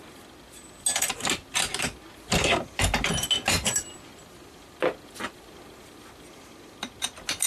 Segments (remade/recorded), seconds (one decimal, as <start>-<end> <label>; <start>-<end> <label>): 0.0-7.5 recorded

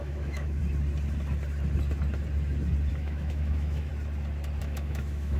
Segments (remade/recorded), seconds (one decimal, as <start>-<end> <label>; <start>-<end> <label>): 0.0-0.6 remade; 0.6-2.9 recorded; 2.9-3.9 remade; 3.9-4.6 recorded; 4.6-5.4 remade

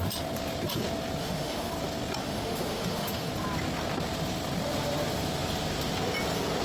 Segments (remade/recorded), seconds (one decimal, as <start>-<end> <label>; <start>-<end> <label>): 0.0-1.2 recorded; 1.2-1.7 remade; 1.7-2.2 recorded; 2.2-3.3 remade; 3.3-6.6 recorded

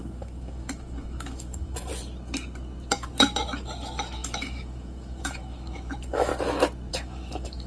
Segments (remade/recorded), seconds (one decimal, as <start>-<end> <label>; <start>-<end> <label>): 0.0-1.9 remade; 1.9-2.9 recorded; 2.9-6.3 remade; 6.3-6.9 recorded; 6.9-7.7 remade

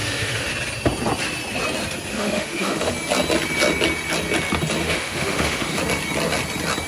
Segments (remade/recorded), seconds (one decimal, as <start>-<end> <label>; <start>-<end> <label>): 0.0-0.5 remade; 0.5-2.1 recorded; 2.1-2.9 remade; 2.9-4.8 recorded; 4.8-5.8 remade; 5.8-6.9 recorded

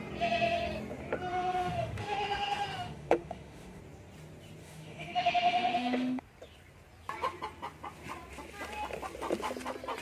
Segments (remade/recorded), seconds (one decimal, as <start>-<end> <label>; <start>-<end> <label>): 0.0-1.3 recorded; 1.3-3.8 remade; 3.8-4.6 recorded; 4.6-6.2 remade; 6.2-10.0 recorded